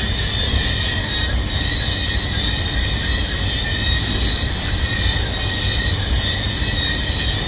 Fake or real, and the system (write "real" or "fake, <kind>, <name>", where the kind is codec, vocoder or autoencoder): real